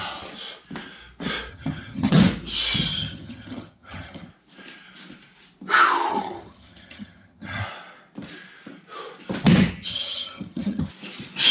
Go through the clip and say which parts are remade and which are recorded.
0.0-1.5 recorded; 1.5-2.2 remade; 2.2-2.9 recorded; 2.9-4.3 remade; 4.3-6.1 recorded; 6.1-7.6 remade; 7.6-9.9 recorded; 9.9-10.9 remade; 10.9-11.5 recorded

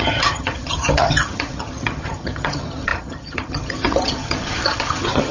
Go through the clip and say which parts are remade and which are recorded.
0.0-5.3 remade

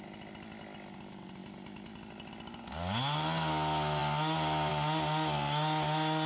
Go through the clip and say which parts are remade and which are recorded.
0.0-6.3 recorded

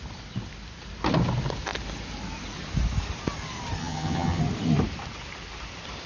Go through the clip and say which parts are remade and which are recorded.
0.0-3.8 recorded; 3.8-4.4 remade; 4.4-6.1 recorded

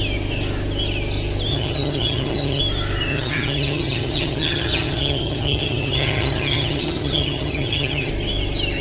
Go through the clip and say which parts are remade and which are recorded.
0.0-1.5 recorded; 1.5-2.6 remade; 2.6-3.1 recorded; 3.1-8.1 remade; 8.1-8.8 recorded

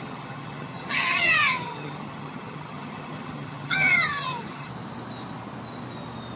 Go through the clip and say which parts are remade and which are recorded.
0.0-4.7 remade; 4.7-6.4 recorded

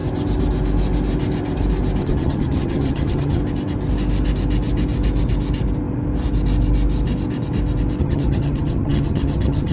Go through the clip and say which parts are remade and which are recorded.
0.0-2.0 recorded; 2.0-3.4 remade; 3.4-8.0 recorded; 8.0-9.7 remade

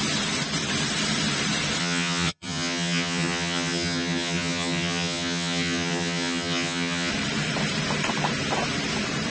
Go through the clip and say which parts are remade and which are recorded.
0.0-1.8 recorded; 1.8-7.1 remade; 7.1-9.3 recorded